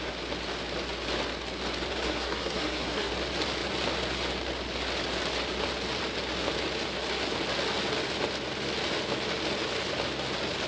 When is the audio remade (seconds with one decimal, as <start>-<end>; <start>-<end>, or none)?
1.9-3.1